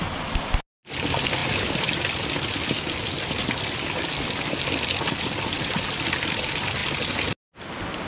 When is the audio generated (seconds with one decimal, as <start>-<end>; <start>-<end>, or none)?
1.4-6.3